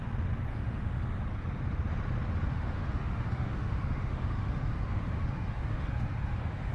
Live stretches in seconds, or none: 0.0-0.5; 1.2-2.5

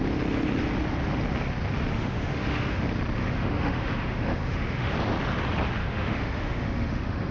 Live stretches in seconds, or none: 0.0-1.9; 2.8-3.2; 4.9-5.8

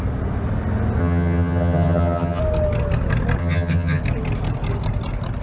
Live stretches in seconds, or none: 0.0-1.0; 2.4-3.4; 4.0-5.4

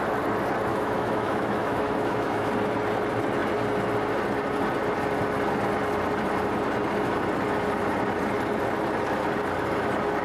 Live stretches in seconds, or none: 0.0-0.7; 2.5-10.2